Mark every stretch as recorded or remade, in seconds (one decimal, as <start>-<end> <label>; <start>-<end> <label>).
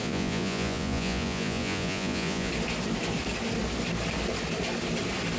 0.0-2.5 remade; 2.5-5.4 recorded